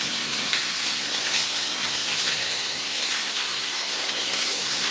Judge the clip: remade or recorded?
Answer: remade